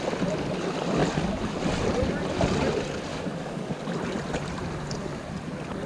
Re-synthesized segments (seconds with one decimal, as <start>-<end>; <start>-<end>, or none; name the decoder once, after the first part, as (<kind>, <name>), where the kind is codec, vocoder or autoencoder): 3.1-3.8 (codec, DAC)